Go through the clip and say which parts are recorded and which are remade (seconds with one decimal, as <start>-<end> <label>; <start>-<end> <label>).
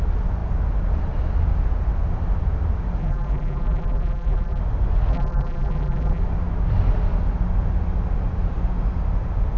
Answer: 0.0-3.0 recorded; 3.0-4.6 remade; 4.6-5.1 recorded; 5.1-6.2 remade; 6.2-9.6 recorded